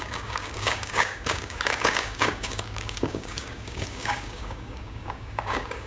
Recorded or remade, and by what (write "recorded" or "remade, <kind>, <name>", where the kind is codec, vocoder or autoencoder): remade, codec, DAC